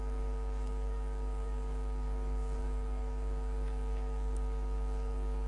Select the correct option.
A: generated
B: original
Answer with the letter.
A